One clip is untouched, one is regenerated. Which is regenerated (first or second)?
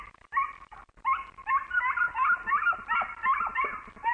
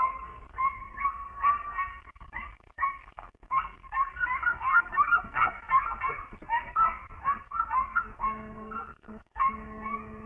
second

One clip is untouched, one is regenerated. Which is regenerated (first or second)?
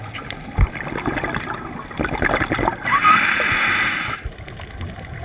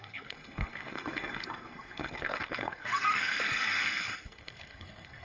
second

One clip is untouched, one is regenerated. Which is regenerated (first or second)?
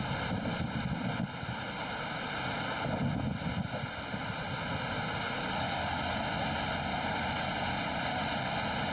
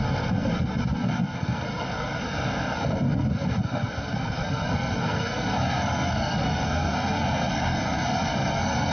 second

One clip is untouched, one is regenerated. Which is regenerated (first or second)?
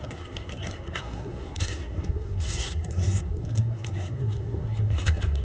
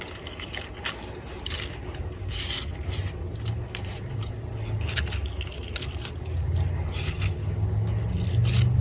first